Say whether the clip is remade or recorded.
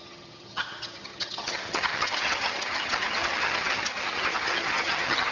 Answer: remade